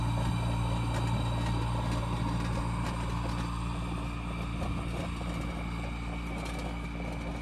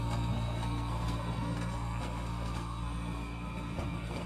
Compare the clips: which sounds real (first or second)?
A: first